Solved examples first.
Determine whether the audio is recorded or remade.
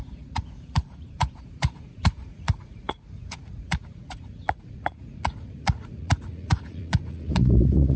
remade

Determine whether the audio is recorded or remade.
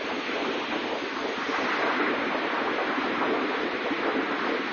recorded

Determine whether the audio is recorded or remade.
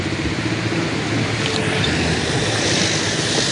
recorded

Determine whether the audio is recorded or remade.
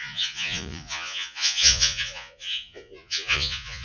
remade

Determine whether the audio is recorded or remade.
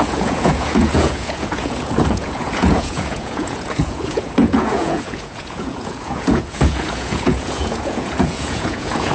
remade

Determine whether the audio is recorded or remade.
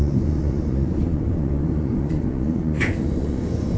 remade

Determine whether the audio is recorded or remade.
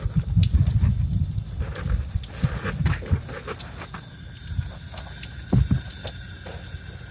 recorded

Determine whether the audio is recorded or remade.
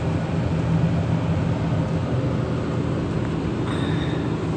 recorded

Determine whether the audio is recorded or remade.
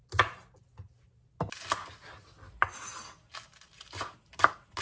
recorded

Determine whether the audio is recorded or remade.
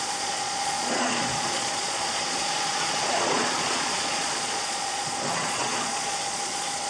remade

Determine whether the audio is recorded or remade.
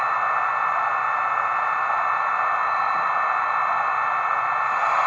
recorded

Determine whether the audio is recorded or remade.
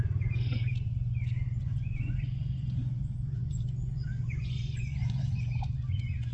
remade